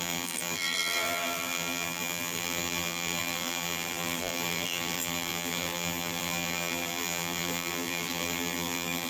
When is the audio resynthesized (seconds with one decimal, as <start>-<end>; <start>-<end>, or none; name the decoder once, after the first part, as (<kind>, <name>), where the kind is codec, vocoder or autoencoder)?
0.0-9.1 (vocoder, BigVGAN v2)